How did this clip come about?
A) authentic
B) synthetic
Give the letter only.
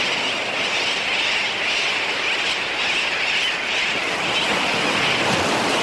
A